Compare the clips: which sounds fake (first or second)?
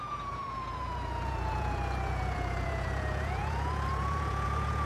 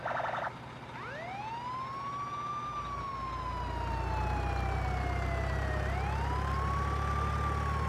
first